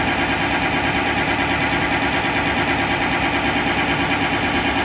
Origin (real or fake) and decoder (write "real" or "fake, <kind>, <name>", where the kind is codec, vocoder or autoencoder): real